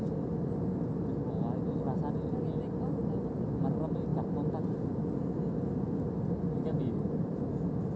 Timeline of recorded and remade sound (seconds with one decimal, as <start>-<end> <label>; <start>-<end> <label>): 0.0-6.7 recorded; 6.7-7.5 remade; 7.5-8.0 recorded